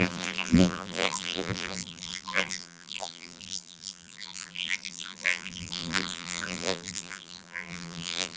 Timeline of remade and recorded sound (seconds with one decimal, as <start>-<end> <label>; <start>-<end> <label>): 0.0-8.4 remade